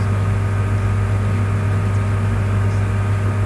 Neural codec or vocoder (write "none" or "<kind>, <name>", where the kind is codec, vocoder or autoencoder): none